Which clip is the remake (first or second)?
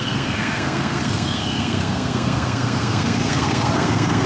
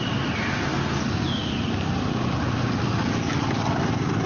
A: first